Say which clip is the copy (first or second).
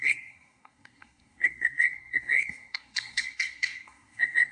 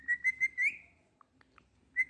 first